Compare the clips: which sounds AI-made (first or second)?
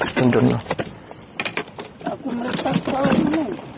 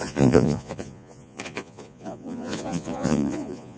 second